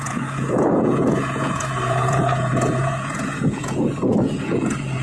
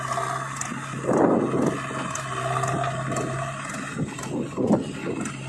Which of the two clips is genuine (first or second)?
second